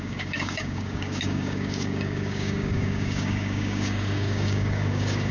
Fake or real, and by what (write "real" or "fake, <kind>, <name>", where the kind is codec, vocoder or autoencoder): fake, codec, DAC